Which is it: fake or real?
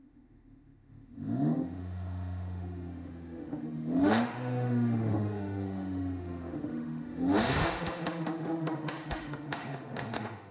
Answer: fake